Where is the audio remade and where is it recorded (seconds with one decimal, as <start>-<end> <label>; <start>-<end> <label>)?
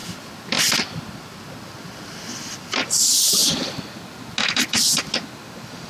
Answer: 0.0-2.9 remade; 2.9-5.9 recorded